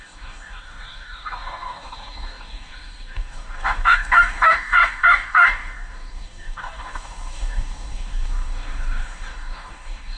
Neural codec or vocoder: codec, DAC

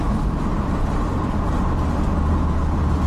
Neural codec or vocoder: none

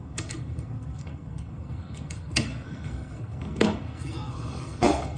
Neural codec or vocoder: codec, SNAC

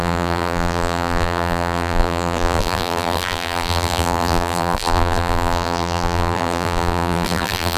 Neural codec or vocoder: vocoder, BigVGAN v2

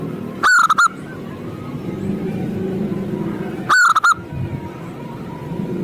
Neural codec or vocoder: none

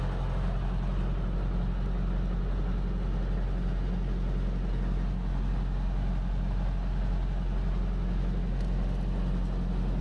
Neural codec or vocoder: none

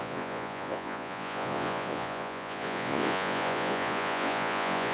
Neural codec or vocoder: vocoder, Vocos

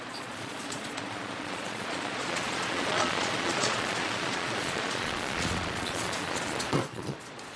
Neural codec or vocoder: vocoder, Vocos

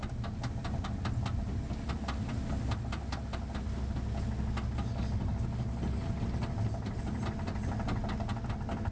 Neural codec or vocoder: none